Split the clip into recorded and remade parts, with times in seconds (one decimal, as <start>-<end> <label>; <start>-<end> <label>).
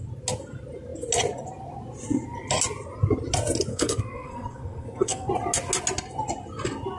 0.0-3.7 recorded; 3.7-5.3 remade; 5.3-7.0 recorded